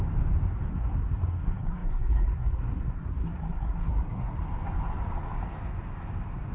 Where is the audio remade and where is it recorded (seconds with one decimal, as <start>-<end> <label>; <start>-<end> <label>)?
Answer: 0.0-0.7 recorded; 0.7-4.4 remade; 4.4-6.5 recorded